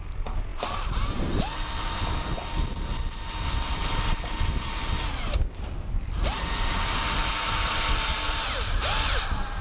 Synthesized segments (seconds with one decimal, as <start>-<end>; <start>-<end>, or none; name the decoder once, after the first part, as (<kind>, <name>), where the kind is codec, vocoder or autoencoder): 0.5-1.4 (vocoder, BigVGAN v2)